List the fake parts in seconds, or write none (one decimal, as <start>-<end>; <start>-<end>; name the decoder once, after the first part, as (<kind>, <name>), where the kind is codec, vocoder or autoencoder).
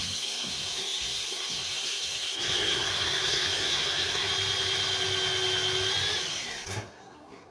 0.0-4.3 (codec, SNAC); 6.3-7.5